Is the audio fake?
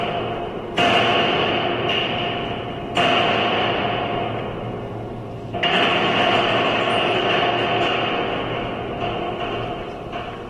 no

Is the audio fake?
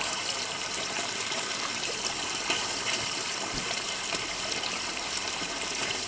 yes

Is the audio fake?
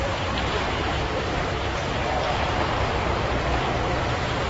yes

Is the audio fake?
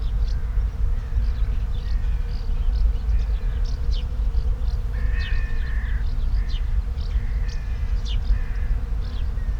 no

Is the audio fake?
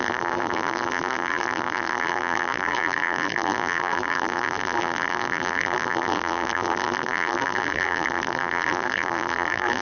yes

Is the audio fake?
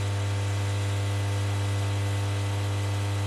no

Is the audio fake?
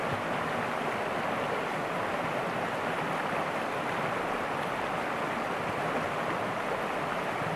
no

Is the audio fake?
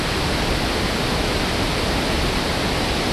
no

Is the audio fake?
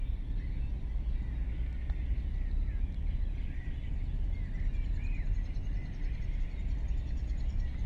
no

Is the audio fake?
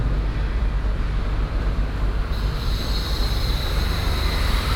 yes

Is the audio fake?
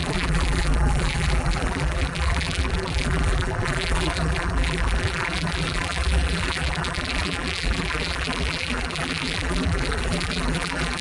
yes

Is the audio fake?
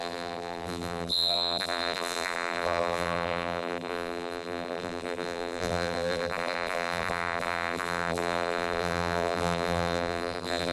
yes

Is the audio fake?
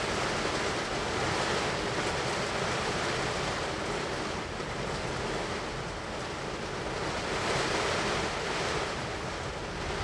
no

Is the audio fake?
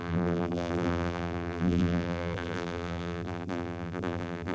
yes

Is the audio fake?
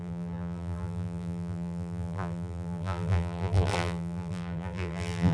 yes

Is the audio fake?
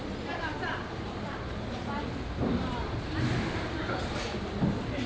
yes